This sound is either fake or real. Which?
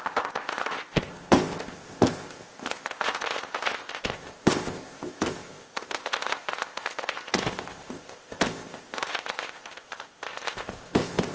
fake